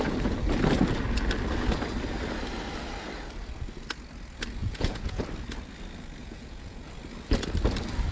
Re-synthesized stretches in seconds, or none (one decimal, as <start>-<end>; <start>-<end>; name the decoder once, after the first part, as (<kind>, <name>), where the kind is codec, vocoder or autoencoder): 4.6-5.2 (vocoder, Vocos); 6.2-6.9

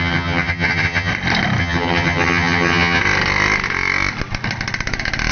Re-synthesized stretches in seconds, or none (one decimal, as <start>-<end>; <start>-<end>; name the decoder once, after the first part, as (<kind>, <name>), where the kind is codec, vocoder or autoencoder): 0.0-1.1 (vocoder, HiFi-GAN); 1.6-3.0

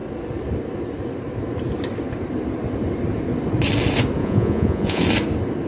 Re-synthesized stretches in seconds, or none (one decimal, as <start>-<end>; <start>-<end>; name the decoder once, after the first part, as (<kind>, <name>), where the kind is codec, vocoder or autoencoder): 4.2-5.0 (vocoder, Vocos)

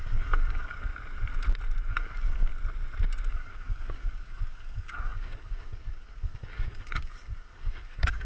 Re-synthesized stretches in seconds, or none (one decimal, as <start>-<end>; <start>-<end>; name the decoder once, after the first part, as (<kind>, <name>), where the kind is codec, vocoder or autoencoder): 0.0-0.9 (codec, DAC); 1.9-2.5; 3.3-8.2

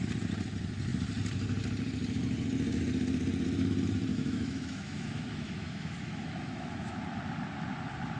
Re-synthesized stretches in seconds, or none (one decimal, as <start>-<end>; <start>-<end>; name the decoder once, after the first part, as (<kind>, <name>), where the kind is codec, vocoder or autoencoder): 4.1-7.0 (autoencoder, DAC-VAE)

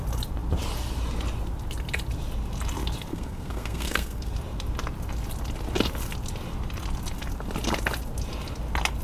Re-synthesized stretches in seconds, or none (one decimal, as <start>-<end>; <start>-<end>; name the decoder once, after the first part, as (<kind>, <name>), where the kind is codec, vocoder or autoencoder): 3.1-4.3 (codec, SNAC)

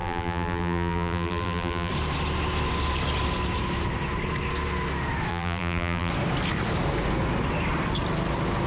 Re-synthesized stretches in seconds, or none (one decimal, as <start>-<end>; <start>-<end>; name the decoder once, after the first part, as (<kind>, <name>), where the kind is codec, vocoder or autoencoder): 0.0-1.9 (vocoder, BigVGAN v2); 5.3-6.1

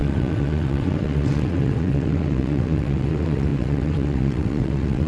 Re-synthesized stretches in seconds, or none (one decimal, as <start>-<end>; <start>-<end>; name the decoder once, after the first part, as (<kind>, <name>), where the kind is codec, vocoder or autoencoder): 0.0-5.1 (vocoder, WaveNeXt)